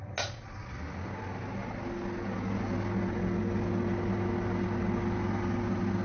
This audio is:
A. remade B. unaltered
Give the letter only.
B